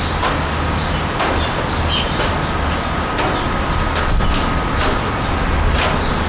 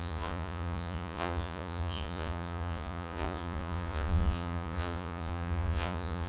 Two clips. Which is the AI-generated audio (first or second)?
second